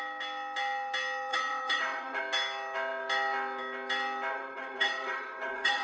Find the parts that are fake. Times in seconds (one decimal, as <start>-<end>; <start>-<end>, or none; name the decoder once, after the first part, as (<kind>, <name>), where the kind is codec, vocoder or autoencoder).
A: 1.3-2.2 (vocoder, WaveNeXt); 4.3-5.8